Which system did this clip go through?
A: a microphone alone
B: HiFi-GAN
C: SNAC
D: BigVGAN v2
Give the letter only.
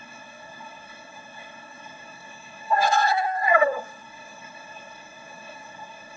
C